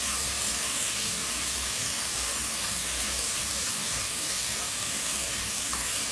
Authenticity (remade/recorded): remade